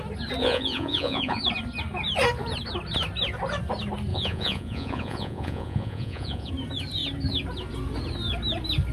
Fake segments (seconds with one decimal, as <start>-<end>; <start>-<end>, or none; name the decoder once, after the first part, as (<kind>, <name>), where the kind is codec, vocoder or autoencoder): 0.4-1.4 (vocoder, Vocos); 4.1-6.5